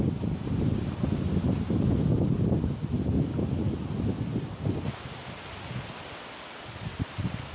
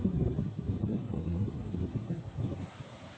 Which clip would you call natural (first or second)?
first